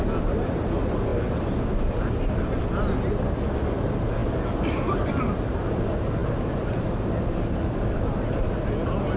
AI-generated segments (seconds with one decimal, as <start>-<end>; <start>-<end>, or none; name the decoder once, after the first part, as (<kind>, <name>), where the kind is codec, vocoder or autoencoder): none